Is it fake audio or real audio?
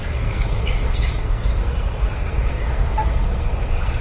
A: fake